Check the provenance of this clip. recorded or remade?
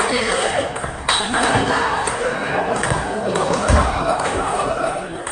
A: remade